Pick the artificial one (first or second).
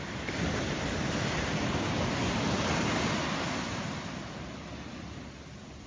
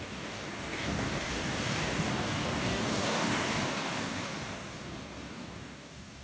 second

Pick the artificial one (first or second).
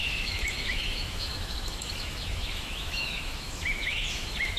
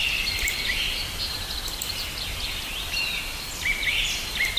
first